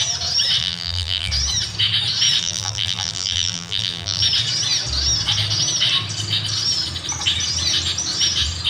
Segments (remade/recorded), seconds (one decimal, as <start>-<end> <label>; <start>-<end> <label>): 0.0-0.6 recorded; 0.6-1.3 remade; 1.3-2.4 recorded; 2.4-4.2 remade; 4.2-8.7 recorded